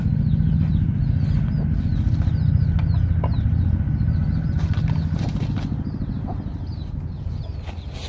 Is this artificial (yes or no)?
no